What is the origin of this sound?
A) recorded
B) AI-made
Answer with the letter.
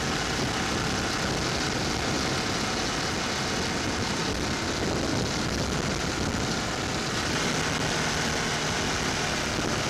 A